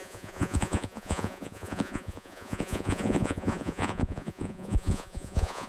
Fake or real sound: fake